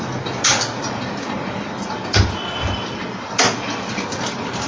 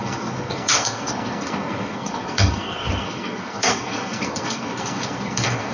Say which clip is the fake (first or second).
second